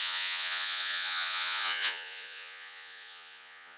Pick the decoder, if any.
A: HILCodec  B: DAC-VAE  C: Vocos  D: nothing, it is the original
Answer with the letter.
C